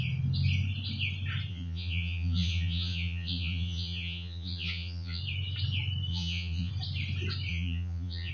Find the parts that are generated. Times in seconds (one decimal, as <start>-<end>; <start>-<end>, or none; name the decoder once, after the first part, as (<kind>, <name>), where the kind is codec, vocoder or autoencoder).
1.5-5.2 (vocoder, Vocos); 6.1-6.7; 7.5-8.3

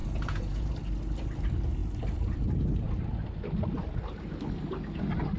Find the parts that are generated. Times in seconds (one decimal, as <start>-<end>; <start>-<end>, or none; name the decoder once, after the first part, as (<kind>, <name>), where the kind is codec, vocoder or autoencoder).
0.0-0.7 (vocoder, Vocos)

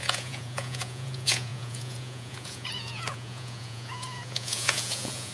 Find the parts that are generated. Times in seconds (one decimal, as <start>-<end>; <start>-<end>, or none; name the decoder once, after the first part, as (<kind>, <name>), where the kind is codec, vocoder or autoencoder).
0.0-5.3 (vocoder, Vocos)